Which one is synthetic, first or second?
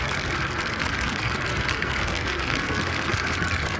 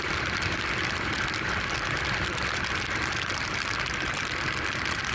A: first